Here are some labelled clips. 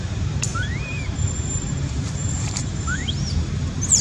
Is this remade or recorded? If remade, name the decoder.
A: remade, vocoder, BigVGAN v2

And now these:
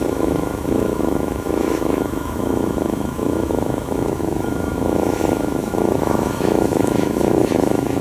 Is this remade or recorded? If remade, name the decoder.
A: remade, autoencoder, DAC-VAE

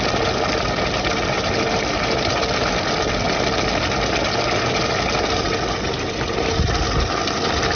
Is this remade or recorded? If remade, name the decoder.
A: recorded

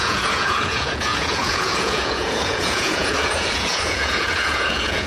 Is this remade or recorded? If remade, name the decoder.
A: remade, vocoder, Vocos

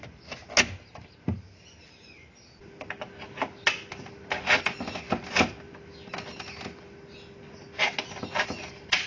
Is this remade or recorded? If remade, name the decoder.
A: recorded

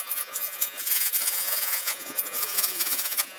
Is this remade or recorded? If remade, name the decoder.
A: remade, vocoder, Vocos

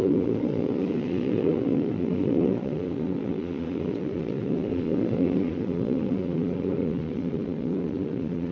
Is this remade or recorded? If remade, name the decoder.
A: remade, vocoder, Vocos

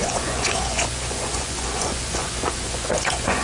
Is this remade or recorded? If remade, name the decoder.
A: remade, vocoder, Vocos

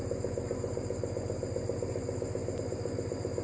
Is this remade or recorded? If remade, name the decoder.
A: recorded